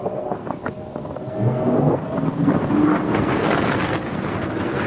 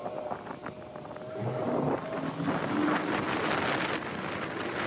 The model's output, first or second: first